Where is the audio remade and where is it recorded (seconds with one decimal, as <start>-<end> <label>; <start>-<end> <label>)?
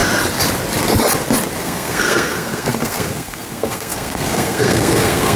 0.0-1.6 recorded; 1.6-5.4 remade